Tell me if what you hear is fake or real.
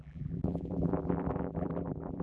fake